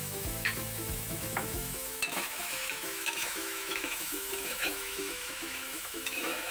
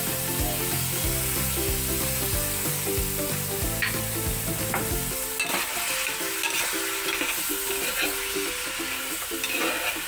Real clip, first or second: second